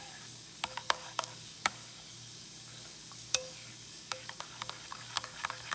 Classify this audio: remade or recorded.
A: remade